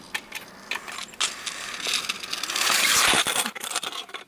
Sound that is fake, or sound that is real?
real